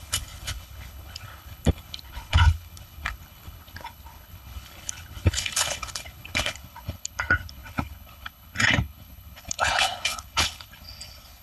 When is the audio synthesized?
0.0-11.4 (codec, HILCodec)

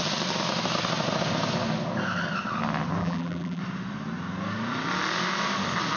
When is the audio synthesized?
3.0-3.6 (vocoder, BigVGAN v2)

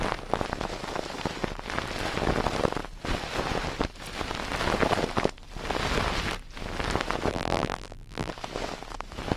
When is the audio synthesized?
7.3-8.3 (vocoder, BigVGAN v2)